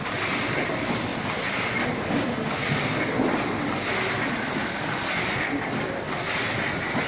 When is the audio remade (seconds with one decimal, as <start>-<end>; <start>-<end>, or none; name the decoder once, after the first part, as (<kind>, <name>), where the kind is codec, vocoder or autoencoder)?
none